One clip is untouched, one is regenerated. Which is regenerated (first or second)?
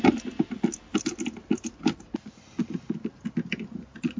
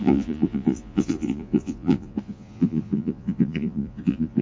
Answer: second